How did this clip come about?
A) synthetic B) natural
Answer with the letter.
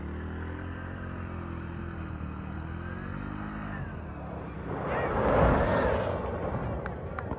B